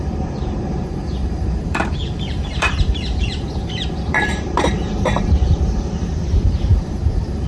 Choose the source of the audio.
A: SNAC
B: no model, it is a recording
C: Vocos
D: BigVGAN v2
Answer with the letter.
D